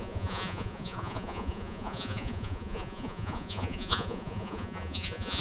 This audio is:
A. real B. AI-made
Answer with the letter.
B